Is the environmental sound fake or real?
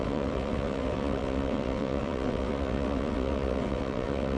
fake